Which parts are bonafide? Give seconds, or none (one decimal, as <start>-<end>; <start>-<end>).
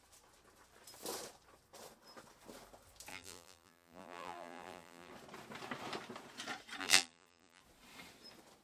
0.0-3.1; 5.1-6.8; 7.6-8.6